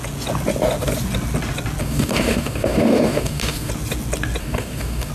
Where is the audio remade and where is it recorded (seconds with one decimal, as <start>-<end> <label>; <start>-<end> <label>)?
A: 0.0-1.8 recorded; 1.8-3.7 remade; 3.7-4.4 recorded; 4.4-5.1 remade

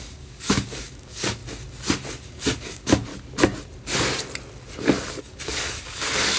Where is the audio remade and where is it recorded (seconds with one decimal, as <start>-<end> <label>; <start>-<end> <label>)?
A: 0.0-1.4 remade; 1.4-2.2 recorded; 2.2-3.1 remade; 3.1-5.2 recorded; 5.2-6.4 remade

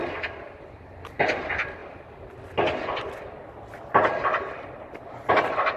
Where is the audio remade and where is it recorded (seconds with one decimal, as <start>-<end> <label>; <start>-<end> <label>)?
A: 0.0-5.8 recorded